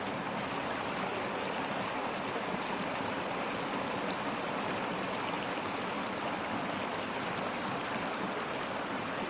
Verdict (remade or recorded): recorded